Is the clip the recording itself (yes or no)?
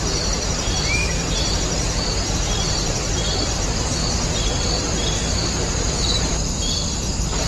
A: no